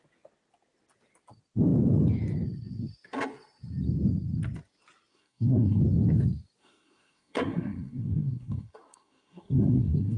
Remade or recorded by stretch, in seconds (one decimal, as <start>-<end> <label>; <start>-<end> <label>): 0.0-5.1 recorded; 5.1-5.8 remade; 5.8-6.6 recorded; 6.6-10.2 remade